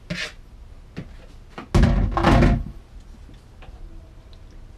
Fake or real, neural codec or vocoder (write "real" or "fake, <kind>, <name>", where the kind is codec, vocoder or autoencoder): real